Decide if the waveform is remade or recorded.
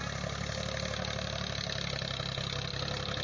recorded